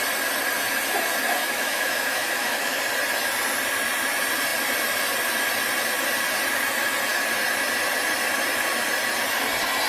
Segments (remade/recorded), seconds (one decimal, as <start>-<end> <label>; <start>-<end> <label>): 0.0-1.4 recorded; 1.4-2.8 remade; 2.8-9.9 recorded